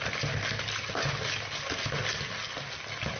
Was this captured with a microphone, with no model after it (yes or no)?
yes